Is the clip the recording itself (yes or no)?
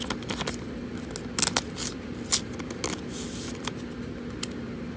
yes